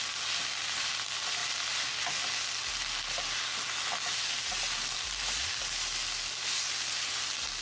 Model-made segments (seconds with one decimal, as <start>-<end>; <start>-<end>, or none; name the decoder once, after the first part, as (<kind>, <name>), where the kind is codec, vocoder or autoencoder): none